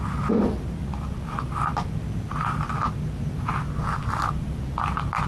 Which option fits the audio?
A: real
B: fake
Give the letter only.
A